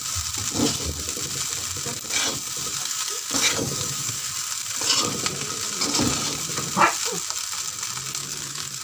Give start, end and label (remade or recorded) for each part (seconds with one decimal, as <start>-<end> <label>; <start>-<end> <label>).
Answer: 0.0-2.8 recorded; 2.8-4.3 remade; 4.3-8.2 recorded; 8.2-8.8 remade